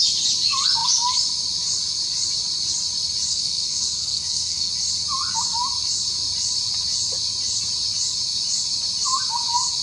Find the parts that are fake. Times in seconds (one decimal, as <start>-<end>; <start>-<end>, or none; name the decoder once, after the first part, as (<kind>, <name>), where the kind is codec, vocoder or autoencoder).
3.3-4.7 (codec, SNAC)